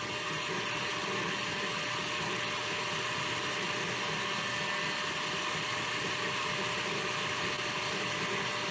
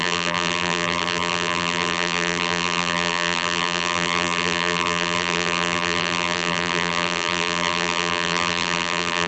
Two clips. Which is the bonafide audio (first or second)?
first